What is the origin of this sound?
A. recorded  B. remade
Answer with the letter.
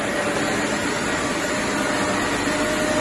A